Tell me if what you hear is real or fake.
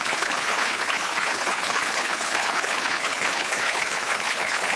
fake